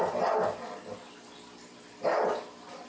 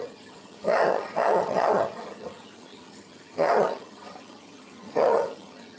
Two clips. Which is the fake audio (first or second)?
second